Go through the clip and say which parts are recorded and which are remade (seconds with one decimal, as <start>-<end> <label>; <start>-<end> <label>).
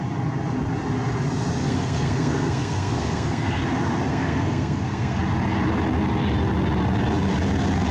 0.0-1.6 recorded; 1.6-3.6 remade; 3.6-4.1 recorded; 4.1-5.2 remade; 5.2-7.9 recorded